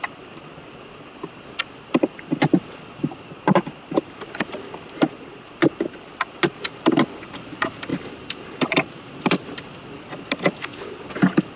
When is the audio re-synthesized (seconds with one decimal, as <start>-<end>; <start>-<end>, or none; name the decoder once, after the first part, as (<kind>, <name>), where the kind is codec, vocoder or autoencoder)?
7.9-9.8 (vocoder, BigVGAN v2)